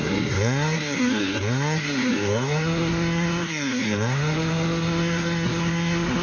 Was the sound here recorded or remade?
remade